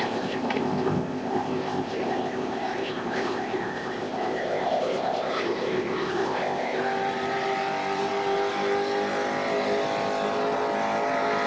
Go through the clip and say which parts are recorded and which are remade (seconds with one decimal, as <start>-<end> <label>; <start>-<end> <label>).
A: 0.0-6.8 remade; 6.8-11.5 recorded